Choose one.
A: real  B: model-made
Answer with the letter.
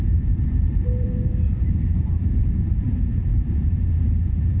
B